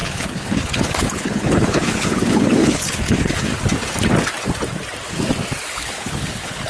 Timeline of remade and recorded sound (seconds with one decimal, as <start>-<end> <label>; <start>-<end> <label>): 0.0-3.5 remade; 3.5-5.7 recorded; 5.7-6.7 remade